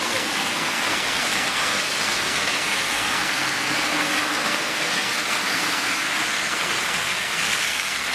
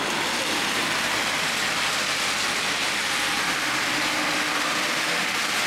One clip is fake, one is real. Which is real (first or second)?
second